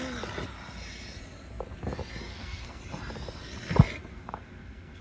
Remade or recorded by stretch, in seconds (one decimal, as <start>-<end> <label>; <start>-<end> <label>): 0.0-2.3 recorded; 2.3-2.8 remade; 2.8-4.1 recorded; 4.1-5.0 remade